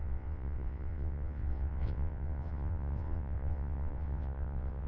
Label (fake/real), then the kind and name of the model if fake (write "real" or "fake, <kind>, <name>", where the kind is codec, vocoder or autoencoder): fake, vocoder, WaveNeXt